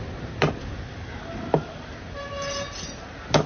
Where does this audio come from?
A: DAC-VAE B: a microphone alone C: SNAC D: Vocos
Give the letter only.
B